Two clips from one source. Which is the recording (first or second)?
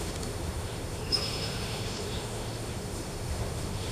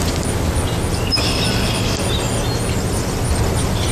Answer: second